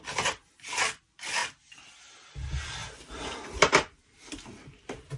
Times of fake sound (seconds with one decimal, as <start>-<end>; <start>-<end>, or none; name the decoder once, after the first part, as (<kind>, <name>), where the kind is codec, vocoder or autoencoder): 2.8-4.3 (vocoder, BigVGAN v2)